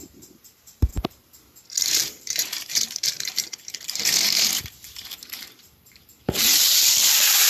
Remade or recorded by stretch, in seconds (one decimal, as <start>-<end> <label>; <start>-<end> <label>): 0.0-0.9 remade; 0.9-1.8 recorded; 1.8-7.5 remade